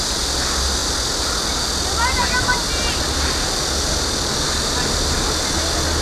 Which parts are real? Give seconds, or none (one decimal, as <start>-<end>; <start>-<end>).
0.0-6.0